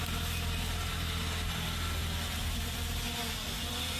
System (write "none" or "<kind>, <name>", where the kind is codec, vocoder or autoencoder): none